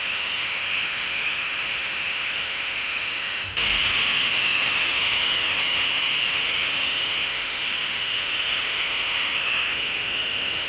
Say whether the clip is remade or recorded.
remade